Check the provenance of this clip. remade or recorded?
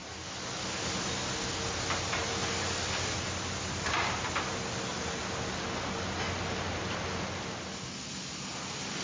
recorded